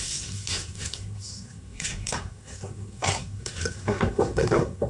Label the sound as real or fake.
fake